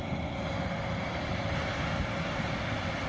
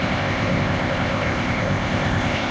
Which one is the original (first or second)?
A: first